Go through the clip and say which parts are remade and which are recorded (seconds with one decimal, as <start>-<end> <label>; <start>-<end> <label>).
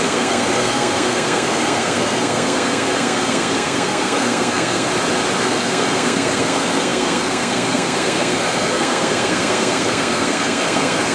0.0-4.9 remade; 4.9-5.4 recorded; 5.4-11.1 remade